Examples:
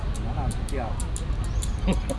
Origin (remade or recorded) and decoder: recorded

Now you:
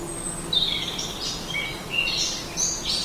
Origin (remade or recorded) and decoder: recorded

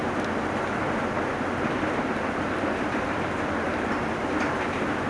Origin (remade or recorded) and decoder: recorded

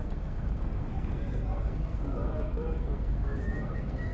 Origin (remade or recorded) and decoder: remade, codec, SNAC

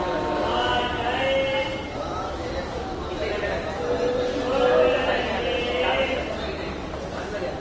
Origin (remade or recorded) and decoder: recorded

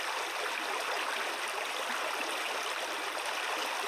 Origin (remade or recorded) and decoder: recorded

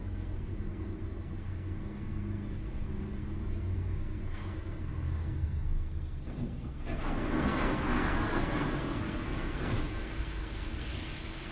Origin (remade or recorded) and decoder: remade, codec, SNAC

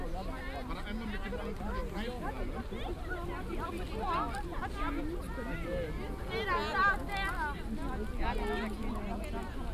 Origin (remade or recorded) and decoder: recorded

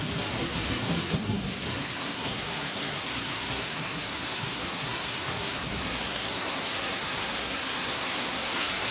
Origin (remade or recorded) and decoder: remade, codec, SNAC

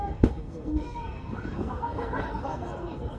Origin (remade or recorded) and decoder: remade, codec, SNAC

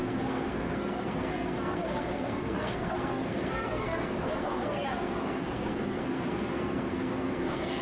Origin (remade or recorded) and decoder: remade, codec, SNAC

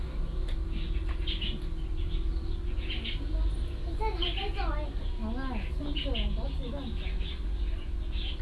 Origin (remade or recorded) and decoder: recorded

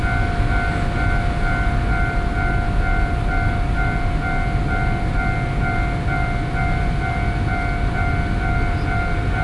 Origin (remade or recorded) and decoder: recorded